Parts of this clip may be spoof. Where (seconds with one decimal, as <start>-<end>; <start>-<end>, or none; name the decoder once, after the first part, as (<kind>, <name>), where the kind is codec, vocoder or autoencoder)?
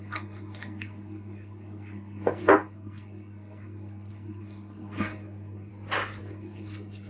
0.0-5.7 (codec, SNAC); 6.2-7.1